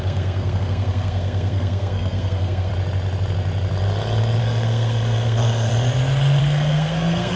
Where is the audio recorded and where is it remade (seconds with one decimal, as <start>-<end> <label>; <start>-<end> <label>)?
0.0-2.7 remade; 2.7-4.4 recorded; 4.4-5.7 remade; 5.7-6.4 recorded; 6.4-7.4 remade